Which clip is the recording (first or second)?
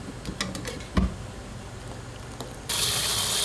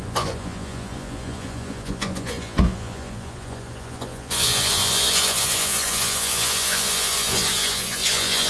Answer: first